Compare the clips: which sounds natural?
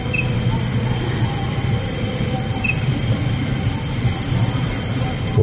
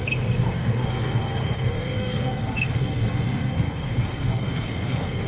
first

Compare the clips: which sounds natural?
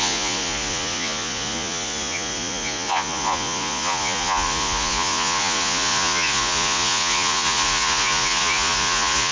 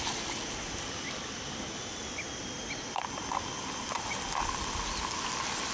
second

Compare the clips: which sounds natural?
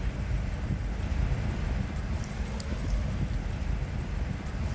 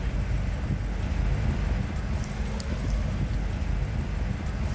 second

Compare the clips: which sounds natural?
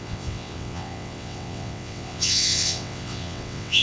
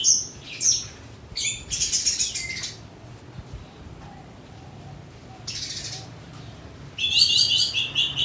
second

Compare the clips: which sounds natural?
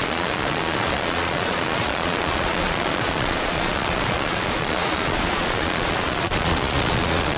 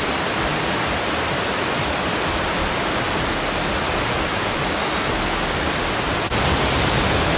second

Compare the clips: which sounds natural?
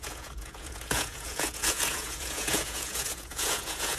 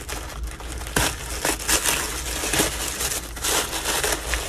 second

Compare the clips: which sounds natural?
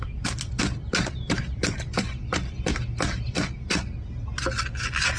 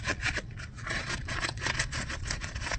first